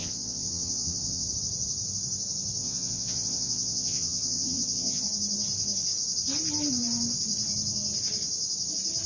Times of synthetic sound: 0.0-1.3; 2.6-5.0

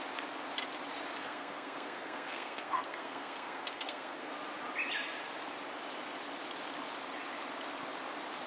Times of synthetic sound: 1.2-4.3

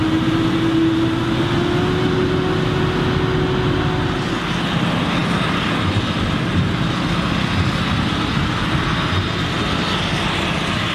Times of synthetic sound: none

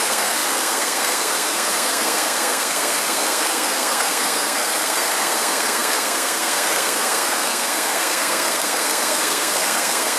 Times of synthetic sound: 0.0-10.2

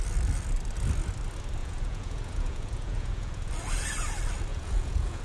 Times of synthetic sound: 1.6-3.5; 4.5-5.2